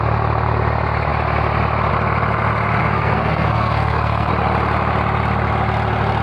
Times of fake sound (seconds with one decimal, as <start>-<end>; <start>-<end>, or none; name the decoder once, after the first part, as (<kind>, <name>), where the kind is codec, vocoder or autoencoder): 2.8-4.3 (codec, SNAC)